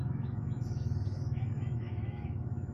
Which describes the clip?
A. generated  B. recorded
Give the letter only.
A